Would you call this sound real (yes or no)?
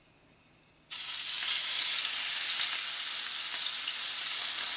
yes